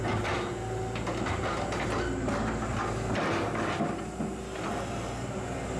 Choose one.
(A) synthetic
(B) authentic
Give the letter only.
B